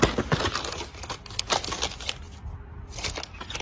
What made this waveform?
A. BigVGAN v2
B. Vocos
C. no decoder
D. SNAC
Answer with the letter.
C